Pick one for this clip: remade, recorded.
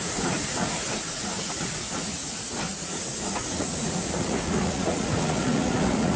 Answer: remade